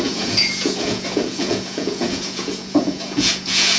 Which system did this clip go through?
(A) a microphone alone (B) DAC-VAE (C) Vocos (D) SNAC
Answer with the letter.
C